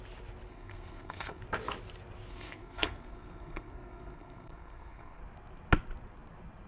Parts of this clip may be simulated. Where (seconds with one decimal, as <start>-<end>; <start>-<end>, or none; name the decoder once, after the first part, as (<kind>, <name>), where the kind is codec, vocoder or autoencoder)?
0.5-1.4 (codec, SNAC); 2.3-5.2